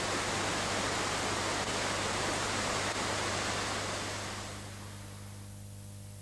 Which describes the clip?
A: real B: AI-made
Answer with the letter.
A